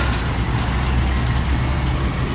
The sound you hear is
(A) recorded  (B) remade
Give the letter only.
A